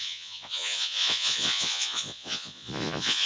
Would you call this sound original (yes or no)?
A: no